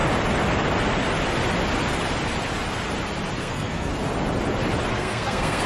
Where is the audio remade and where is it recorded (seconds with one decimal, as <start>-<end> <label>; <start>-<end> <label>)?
0.0-3.4 recorded; 3.4-3.9 remade; 3.9-4.9 recorded; 4.9-5.7 remade